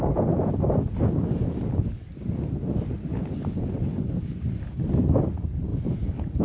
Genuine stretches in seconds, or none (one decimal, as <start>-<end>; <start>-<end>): 0.0-6.4